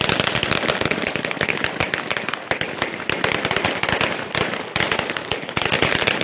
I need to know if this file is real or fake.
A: real